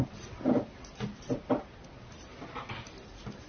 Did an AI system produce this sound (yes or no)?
no